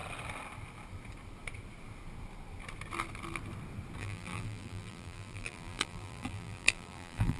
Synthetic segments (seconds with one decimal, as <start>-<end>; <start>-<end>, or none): 4.0-7.4